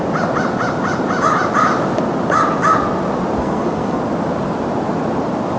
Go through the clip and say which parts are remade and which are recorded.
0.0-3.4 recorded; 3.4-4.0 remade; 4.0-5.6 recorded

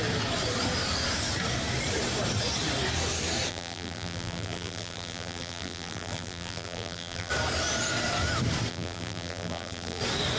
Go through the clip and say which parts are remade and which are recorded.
0.0-3.5 recorded; 3.5-7.3 remade; 7.3-8.7 recorded; 8.7-10.0 remade; 10.0-10.4 recorded

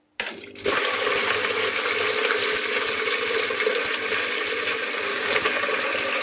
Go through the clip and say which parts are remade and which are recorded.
0.0-5.1 recorded; 5.1-5.6 remade; 5.6-6.2 recorded

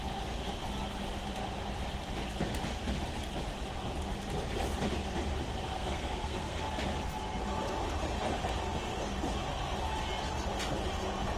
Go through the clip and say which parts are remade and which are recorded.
0.0-5.7 recorded; 5.7-6.6 remade; 6.6-11.4 recorded